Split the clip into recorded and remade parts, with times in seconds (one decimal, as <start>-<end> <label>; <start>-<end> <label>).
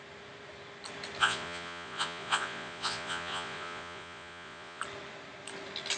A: 0.0-1.2 recorded; 1.2-4.8 remade; 4.8-6.0 recorded